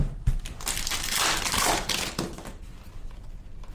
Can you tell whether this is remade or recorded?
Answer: recorded